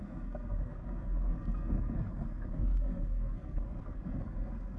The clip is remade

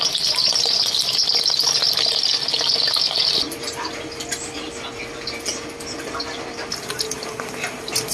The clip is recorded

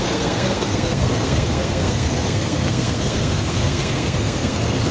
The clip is remade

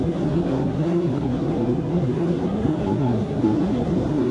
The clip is remade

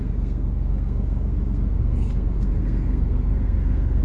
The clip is remade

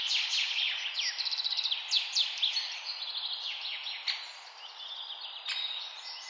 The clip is recorded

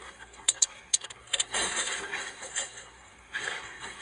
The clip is remade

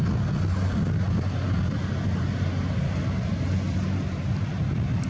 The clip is recorded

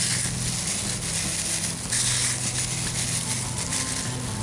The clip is recorded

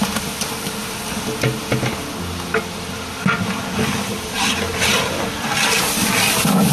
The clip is recorded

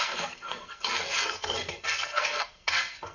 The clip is remade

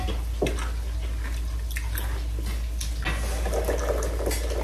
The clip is recorded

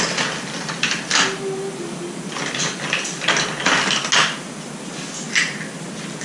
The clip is recorded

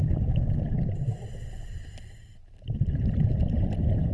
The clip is recorded